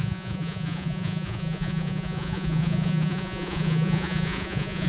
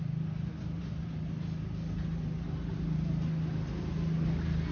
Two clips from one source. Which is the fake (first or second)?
first